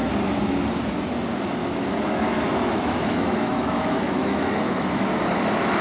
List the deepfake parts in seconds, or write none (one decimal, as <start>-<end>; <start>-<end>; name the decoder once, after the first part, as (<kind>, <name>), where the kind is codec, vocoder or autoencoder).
1.6-5.1 (autoencoder, DAC-VAE)